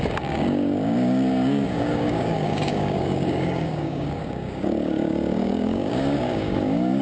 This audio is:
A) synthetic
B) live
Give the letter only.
A